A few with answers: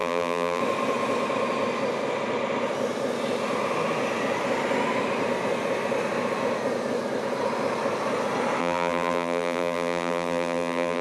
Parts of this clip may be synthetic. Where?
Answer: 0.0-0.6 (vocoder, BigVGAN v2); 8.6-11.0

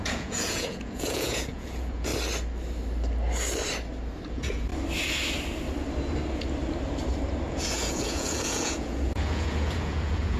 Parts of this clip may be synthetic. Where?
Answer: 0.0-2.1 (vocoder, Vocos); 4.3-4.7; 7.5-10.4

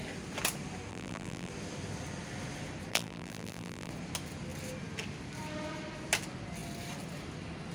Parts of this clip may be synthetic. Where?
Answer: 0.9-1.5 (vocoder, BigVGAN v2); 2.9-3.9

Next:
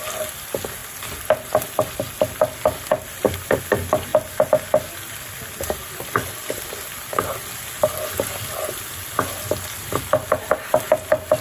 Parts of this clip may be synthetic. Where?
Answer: none

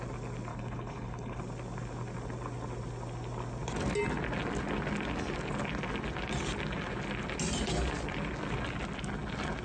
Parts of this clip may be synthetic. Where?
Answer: 0.5-1.4 (codec, HILCodec)